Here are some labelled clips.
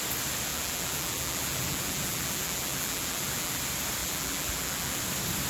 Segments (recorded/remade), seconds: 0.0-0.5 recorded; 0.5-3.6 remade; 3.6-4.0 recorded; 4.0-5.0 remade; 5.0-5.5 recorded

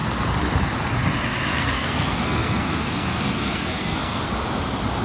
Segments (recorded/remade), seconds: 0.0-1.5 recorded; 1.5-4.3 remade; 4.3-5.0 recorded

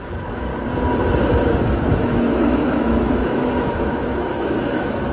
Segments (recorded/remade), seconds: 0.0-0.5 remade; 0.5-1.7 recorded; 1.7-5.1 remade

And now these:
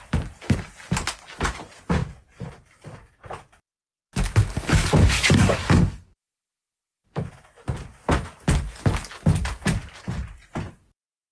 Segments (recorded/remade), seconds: 0.0-4.4 recorded; 4.4-7.3 remade; 7.3-11.3 recorded

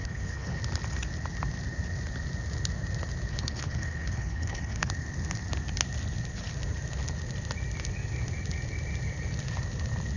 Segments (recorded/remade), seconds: 0.0-0.6 remade; 0.6-3.3 recorded; 3.3-4.9 remade; 4.9-10.2 recorded

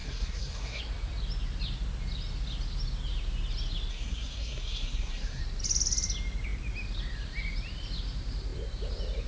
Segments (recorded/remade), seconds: 0.0-0.8 remade; 0.8-3.9 recorded; 3.9-5.4 remade; 5.4-9.3 recorded

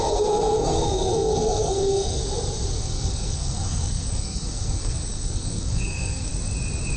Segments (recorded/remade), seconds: 0.0-2.2 remade; 2.2-2.8 recorded; 2.8-6.3 remade; 6.3-7.0 recorded

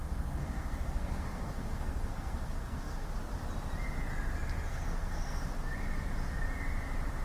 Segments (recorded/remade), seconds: 0.0-3.1 remade; 3.1-4.7 recorded; 4.7-5.5 remade; 5.5-7.2 recorded